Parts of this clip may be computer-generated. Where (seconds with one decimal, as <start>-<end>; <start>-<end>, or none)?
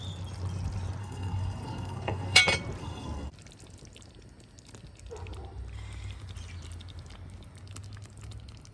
1.0-2.4; 2.8-3.3